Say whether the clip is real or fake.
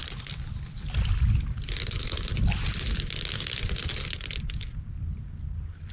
fake